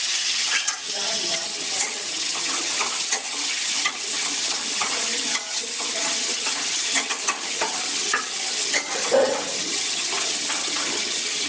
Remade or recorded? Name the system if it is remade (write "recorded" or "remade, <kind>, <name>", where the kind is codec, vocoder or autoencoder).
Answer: remade, vocoder, HiFi-GAN